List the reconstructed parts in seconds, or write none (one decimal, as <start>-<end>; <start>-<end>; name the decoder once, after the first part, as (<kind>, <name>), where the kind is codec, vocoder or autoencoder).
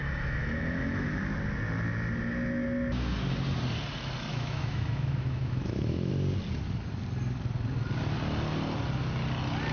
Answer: 0.0-1.2 (autoencoder, DAC-VAE); 4.3-6.1